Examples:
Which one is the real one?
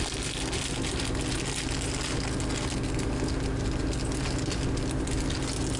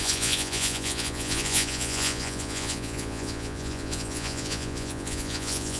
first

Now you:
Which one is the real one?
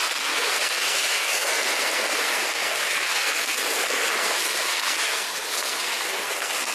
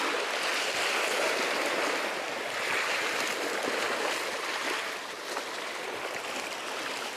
second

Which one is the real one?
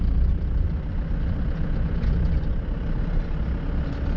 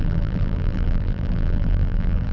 first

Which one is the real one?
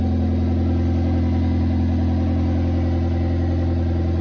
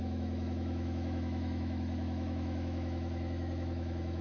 first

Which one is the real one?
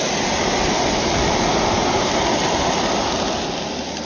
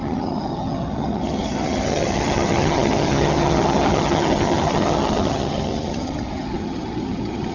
first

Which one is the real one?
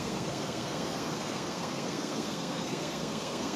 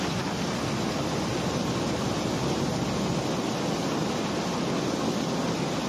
second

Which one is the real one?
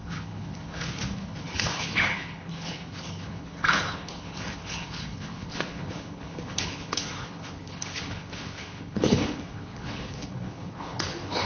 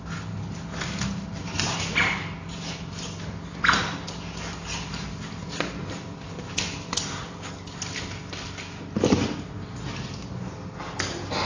second